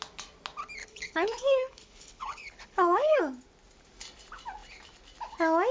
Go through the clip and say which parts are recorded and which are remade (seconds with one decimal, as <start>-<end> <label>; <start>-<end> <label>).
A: 0.0-0.8 recorded; 0.8-3.2 remade; 3.2-5.7 recorded